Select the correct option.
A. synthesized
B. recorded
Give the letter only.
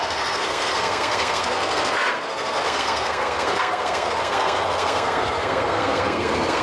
A